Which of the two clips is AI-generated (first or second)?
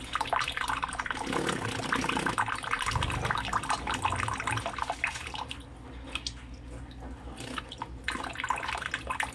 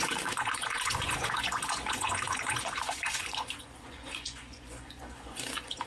second